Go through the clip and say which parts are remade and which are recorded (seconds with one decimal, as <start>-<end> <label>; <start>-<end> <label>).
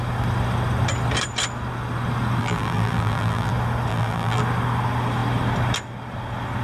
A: 0.0-2.4 recorded; 2.4-3.5 remade; 3.5-3.9 recorded; 3.9-4.4 remade; 4.4-6.6 recorded